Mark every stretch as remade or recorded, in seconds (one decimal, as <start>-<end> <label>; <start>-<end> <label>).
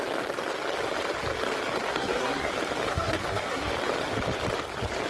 0.0-1.9 recorded; 1.9-2.5 remade; 2.5-2.9 recorded; 2.9-3.7 remade; 3.7-5.1 recorded